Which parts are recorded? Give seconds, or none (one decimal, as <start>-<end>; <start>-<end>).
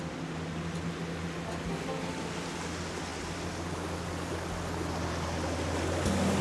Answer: 0.0-6.4